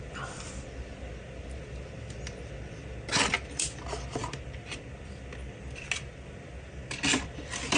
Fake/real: real